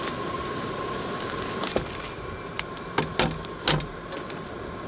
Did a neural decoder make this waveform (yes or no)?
no